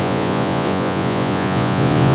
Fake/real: fake